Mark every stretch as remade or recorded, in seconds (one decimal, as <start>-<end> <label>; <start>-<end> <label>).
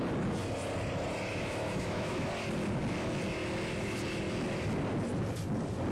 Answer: 0.0-1.3 recorded; 1.3-2.3 remade; 2.3-5.9 recorded